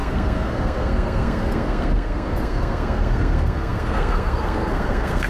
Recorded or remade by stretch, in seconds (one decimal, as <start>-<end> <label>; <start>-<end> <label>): 0.0-5.3 remade